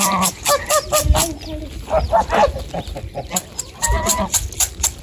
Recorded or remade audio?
recorded